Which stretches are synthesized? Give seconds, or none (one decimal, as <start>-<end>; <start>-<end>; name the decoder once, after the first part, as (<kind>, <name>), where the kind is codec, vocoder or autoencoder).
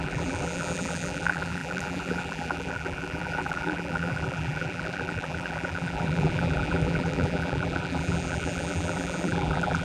0.0-9.8 (vocoder, BigVGAN v2)